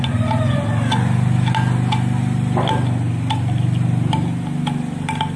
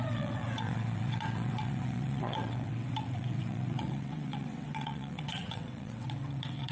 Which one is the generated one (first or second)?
second